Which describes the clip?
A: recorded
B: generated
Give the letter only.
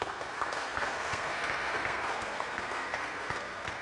B